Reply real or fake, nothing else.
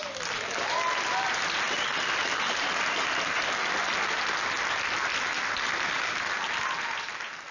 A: real